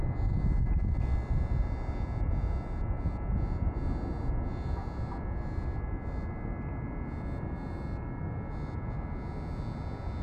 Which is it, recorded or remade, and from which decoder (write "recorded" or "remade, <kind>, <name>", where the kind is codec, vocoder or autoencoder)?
recorded